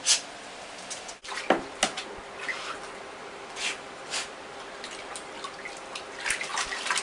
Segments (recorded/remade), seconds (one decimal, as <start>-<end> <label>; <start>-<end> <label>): 0.0-7.0 recorded